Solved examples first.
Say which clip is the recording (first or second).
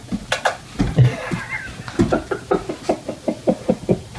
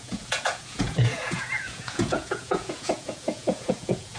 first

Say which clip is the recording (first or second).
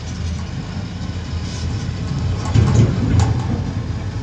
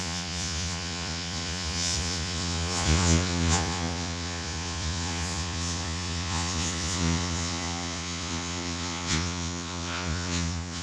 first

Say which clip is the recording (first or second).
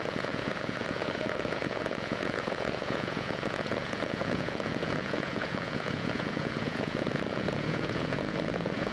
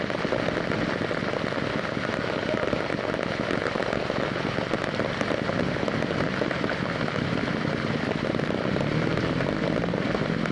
second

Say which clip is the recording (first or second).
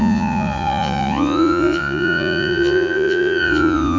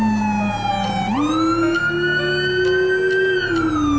second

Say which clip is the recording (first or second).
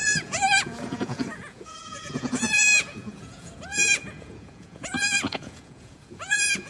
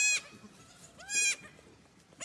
second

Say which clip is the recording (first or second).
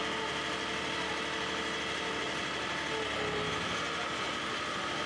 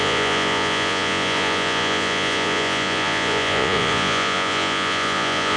first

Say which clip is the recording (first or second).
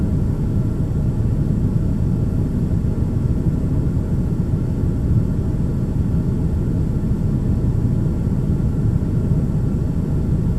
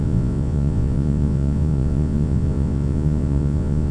first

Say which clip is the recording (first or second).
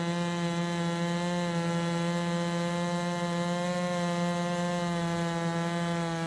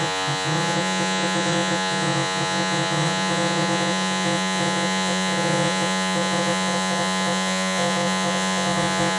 first